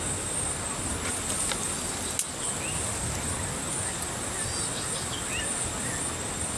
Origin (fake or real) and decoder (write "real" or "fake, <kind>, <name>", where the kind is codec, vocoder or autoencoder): real